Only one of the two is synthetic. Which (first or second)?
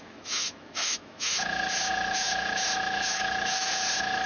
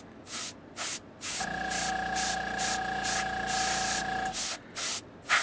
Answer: first